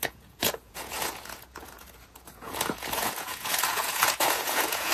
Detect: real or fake fake